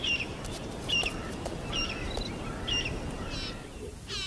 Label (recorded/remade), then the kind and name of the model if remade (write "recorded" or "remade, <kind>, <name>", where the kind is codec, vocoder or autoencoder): recorded